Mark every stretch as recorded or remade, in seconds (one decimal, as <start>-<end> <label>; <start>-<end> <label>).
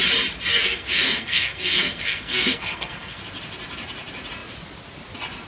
0.0-0.5 recorded; 0.5-3.2 remade; 3.2-5.5 recorded